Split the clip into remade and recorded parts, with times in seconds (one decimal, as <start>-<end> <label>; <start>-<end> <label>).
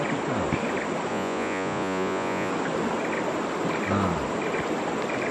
0.0-1.1 recorded; 1.1-2.5 remade; 2.5-5.3 recorded